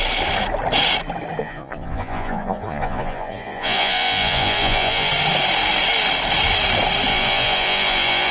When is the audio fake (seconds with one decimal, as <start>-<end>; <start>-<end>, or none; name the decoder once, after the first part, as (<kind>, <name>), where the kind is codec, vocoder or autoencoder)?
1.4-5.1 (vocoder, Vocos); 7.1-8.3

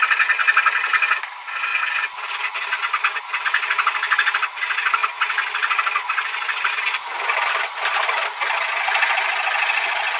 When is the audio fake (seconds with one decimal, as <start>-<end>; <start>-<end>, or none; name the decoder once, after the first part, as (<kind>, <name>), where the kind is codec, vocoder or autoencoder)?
none

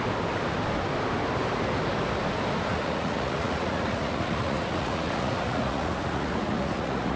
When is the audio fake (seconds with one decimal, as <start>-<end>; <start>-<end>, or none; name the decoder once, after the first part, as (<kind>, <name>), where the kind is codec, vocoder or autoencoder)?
2.7-7.2 (vocoder, Vocos)

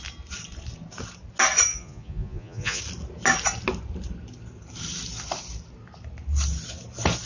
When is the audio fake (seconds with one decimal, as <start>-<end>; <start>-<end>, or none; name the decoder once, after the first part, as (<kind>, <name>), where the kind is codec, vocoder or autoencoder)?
1.7-2.8 (vocoder, Vocos)

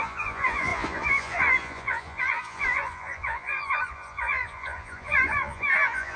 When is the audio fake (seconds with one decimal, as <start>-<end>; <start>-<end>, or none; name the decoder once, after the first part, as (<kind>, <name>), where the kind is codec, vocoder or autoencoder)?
0.0-6.2 (vocoder, Vocos)

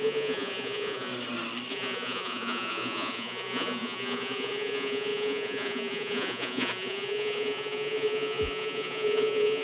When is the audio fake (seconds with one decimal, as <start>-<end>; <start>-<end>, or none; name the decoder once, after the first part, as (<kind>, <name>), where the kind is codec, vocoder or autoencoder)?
0.0-1.1 (vocoder, Vocos); 1.7-9.6

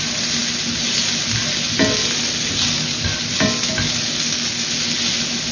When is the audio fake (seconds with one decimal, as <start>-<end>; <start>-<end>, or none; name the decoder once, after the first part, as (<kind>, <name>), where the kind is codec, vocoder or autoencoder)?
none